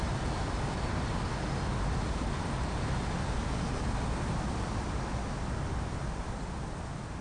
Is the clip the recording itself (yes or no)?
yes